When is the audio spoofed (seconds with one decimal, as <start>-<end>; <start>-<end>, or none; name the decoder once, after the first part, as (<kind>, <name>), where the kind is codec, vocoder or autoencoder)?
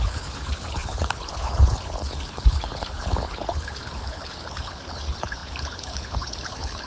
0.0-6.9 (codec, HILCodec)